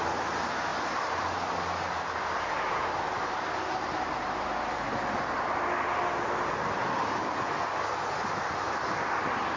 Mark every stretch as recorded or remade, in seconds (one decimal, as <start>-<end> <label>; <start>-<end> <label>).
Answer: 0.0-9.6 recorded